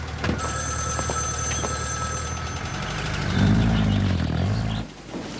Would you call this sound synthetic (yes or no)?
no